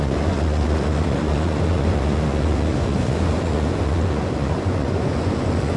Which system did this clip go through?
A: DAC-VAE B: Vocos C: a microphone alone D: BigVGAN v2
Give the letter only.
B